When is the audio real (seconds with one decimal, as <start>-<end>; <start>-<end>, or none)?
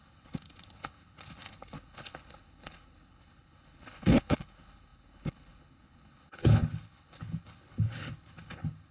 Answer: none